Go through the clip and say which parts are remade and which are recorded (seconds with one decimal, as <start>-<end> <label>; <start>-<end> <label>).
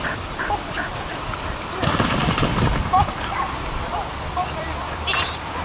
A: 0.0-5.6 remade